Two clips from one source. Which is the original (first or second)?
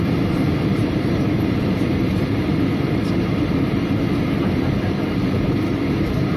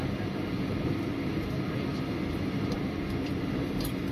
second